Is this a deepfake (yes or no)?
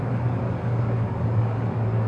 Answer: yes